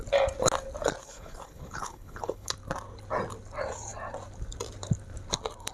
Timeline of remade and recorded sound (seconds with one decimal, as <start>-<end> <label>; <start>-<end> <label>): 0.0-1.0 recorded; 1.0-2.5 remade; 2.5-5.7 recorded